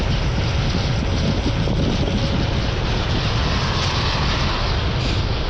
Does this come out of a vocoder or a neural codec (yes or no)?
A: no